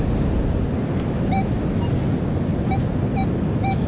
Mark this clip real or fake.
real